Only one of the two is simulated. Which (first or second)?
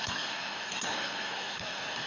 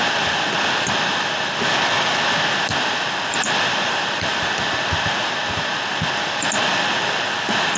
first